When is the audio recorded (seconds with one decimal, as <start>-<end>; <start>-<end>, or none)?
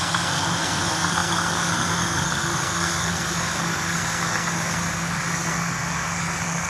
none